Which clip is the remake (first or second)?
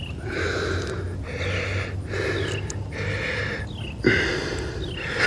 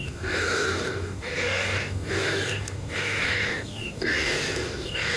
second